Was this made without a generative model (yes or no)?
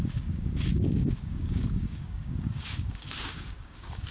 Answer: no